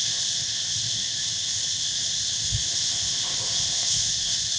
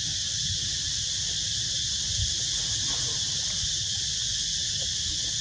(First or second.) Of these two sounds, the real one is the second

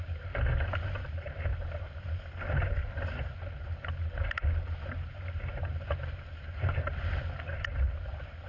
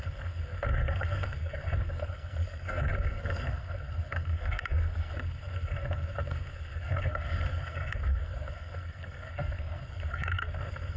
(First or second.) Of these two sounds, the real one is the first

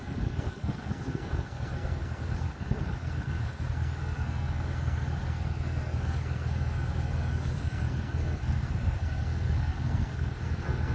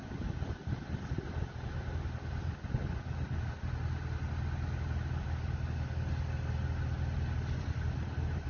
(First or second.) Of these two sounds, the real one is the second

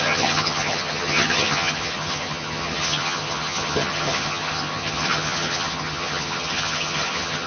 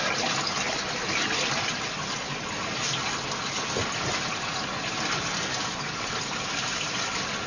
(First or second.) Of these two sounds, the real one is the second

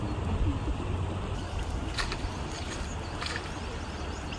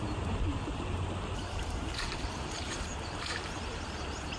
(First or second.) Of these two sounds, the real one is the first